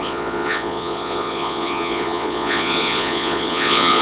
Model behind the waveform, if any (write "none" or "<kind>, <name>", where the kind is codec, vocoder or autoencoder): vocoder, Vocos